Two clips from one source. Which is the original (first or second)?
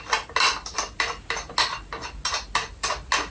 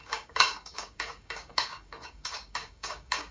first